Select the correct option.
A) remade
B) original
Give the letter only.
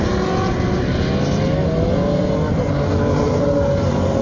B